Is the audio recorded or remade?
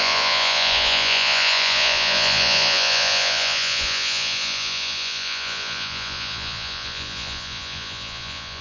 remade